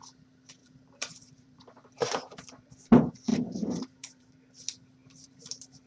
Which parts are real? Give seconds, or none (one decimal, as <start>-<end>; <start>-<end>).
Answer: 0.0-0.6; 2.7-3.3; 4.4-5.0